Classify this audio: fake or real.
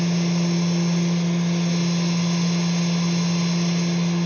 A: real